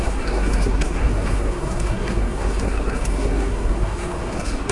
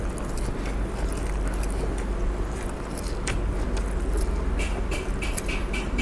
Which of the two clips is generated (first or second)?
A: first